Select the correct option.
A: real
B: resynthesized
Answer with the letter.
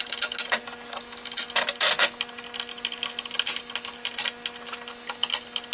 A